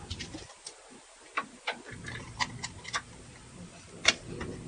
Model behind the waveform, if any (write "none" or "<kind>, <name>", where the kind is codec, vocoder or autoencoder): none